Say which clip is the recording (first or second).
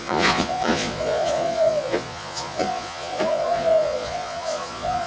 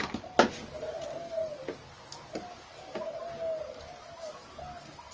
second